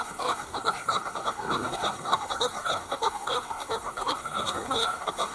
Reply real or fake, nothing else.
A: fake